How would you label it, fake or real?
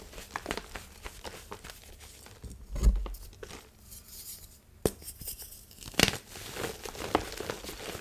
real